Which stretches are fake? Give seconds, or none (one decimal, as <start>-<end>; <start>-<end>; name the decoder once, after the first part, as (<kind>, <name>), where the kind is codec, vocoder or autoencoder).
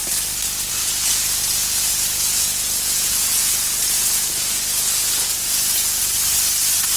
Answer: 0.7-6.0 (vocoder, Vocos)